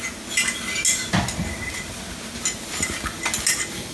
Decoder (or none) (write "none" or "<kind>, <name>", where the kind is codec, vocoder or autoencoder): none